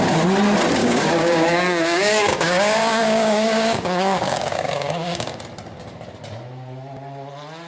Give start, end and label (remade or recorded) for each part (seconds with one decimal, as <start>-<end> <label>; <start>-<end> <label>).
0.0-0.8 recorded; 0.8-5.4 remade; 5.4-7.7 recorded